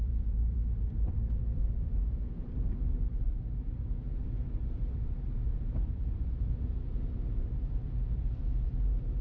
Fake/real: fake